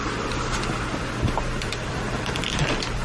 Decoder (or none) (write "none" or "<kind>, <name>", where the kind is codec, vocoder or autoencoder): vocoder, BigVGAN v2